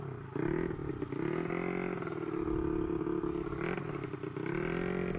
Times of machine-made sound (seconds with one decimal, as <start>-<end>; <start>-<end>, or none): none